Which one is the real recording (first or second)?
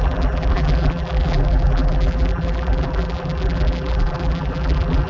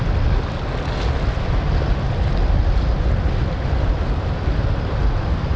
second